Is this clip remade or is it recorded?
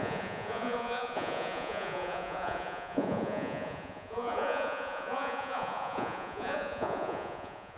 remade